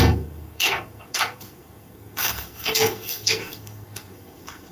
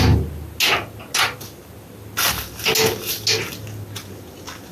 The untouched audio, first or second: second